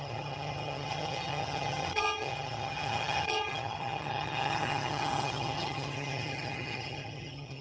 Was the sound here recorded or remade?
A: remade